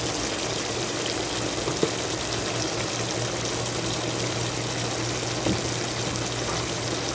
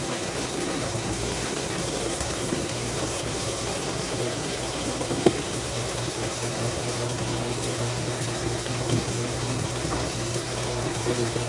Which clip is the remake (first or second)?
second